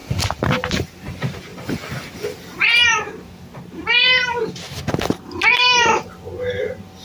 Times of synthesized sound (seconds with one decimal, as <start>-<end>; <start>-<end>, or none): 1.5-3.1